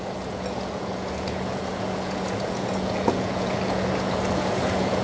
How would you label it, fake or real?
fake